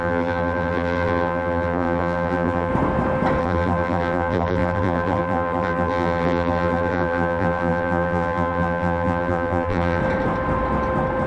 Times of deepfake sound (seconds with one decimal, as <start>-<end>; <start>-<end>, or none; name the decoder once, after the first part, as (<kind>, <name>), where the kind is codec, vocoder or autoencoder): 0.0-2.7 (vocoder, BigVGAN v2); 3.4-10.0